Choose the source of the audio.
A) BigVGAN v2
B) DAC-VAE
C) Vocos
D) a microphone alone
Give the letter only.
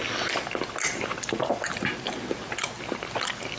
D